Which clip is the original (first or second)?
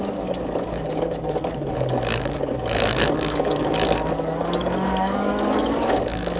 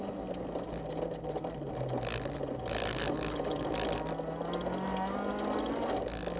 second